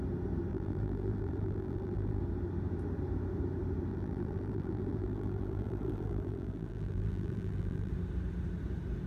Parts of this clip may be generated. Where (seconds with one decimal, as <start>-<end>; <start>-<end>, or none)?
0.5-2.2; 3.9-7.9

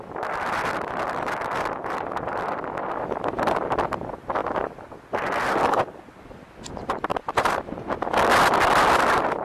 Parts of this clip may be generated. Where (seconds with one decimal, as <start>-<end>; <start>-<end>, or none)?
7.1-7.7

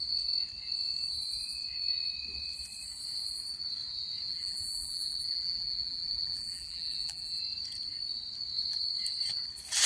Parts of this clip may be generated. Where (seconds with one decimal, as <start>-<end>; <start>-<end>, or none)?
4.3-7.4

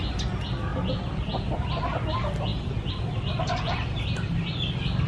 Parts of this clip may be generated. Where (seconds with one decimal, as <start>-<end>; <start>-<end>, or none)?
none

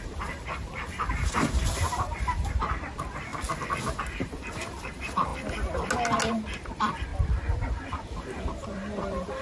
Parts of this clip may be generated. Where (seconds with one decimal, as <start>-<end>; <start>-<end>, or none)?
0.0-3.3; 4.0-5.3; 6.3-7.1; 7.7-9.4